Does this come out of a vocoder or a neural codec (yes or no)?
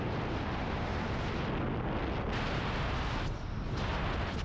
no